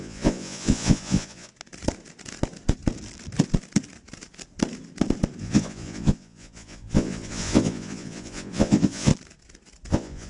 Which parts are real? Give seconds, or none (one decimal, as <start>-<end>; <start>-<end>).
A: 1.5-5.4; 9.1-9.9